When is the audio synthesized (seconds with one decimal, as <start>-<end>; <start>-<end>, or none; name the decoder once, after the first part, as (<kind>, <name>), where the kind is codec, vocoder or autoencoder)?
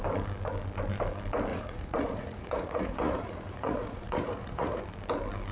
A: 1.5-4.8 (vocoder, Vocos)